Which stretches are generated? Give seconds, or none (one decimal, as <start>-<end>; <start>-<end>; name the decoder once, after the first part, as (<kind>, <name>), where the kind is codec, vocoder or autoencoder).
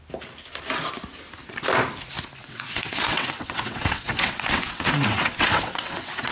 2.4-6.3 (vocoder, WaveNeXt)